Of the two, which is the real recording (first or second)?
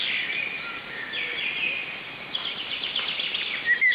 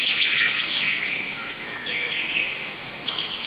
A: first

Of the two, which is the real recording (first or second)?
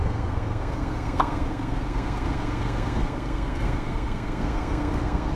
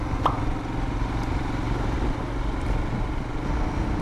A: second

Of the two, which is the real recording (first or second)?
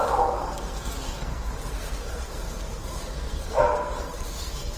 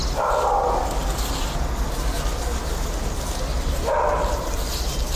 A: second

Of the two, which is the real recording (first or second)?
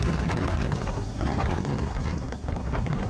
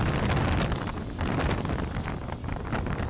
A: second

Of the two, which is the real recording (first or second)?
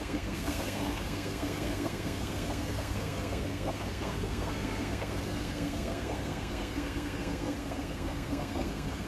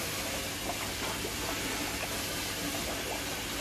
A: second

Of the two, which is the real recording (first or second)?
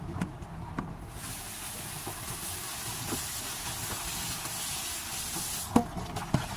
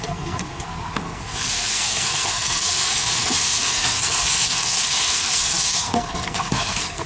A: first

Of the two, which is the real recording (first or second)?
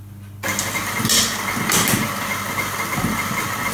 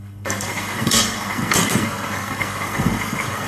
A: first